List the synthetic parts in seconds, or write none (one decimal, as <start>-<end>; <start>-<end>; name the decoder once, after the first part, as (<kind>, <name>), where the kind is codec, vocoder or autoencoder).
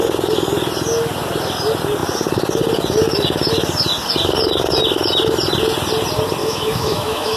6.4-7.4 (autoencoder, DAC-VAE)